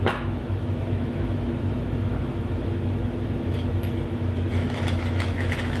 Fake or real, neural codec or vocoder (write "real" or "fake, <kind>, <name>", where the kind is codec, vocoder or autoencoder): fake, autoencoder, DAC-VAE